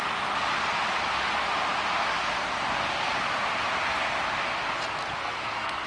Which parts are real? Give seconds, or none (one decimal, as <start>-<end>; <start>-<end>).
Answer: 0.0-5.2